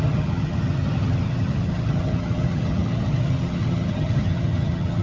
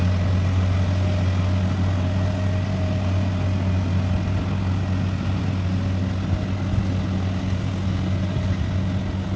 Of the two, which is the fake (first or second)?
first